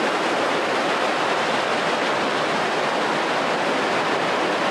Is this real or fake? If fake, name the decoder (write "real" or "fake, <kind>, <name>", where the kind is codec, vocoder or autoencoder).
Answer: real